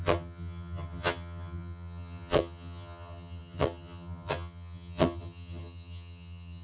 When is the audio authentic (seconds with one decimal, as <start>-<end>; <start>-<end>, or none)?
none